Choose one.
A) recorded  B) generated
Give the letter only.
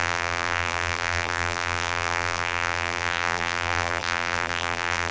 B